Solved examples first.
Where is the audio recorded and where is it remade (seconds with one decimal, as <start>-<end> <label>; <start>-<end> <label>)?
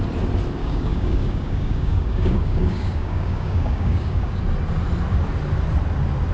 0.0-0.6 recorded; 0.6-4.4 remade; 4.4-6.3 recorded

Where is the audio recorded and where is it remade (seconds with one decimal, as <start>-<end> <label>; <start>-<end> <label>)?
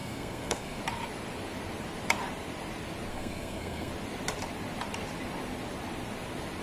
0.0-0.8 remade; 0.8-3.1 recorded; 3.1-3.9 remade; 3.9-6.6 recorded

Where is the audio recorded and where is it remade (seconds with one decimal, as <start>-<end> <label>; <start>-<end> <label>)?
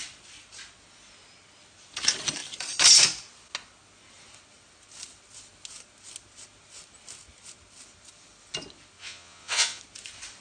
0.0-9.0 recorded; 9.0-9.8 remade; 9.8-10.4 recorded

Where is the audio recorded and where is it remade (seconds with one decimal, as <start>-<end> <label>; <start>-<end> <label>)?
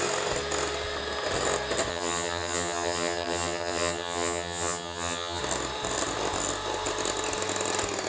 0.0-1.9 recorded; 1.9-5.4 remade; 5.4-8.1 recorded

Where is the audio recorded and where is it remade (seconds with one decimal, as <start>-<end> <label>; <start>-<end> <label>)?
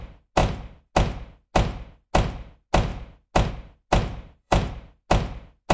0.0-0.4 recorded; 0.4-0.9 remade; 0.9-4.1 recorded; 4.1-4.7 remade; 4.7-5.7 recorded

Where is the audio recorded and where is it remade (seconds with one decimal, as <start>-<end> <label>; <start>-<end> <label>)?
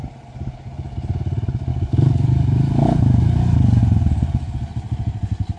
0.0-1.7 recorded; 1.7-3.8 remade; 3.8-5.6 recorded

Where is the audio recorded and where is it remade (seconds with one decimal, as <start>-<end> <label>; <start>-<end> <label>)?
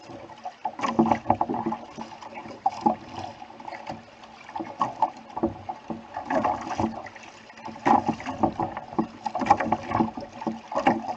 0.0-2.4 recorded; 2.4-3.1 remade; 3.1-11.2 recorded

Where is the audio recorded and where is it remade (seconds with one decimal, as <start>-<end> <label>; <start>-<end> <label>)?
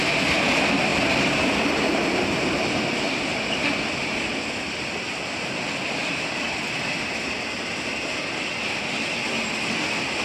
0.0-10.2 recorded